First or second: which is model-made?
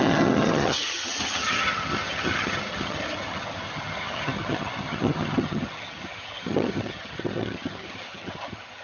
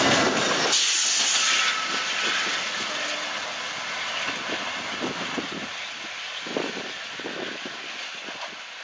first